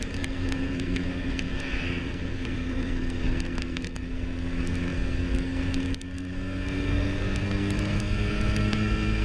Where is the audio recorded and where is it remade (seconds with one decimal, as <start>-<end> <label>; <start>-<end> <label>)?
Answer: 0.0-9.2 remade